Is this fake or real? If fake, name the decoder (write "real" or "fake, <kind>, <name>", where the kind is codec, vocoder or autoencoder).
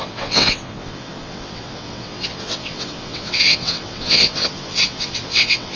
fake, vocoder, WaveNeXt